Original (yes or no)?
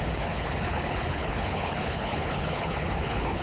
no